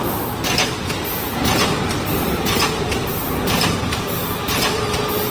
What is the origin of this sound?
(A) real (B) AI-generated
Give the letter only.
A